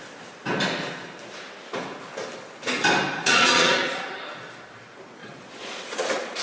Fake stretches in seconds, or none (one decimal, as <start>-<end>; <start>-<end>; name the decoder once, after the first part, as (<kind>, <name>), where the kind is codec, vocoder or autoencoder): 3.2-4.2 (vocoder, Vocos); 5.2-6.4